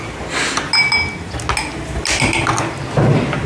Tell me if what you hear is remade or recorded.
recorded